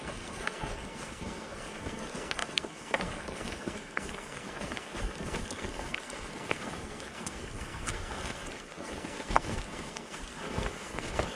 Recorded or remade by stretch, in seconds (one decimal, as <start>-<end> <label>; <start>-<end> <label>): 0.0-11.4 remade